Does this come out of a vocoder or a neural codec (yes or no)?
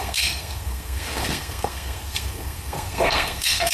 yes